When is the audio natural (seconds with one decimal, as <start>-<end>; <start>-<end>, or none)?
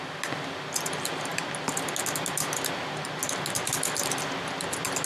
0.0-5.1